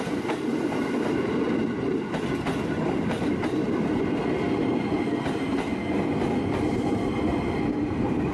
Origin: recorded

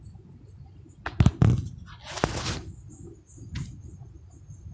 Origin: recorded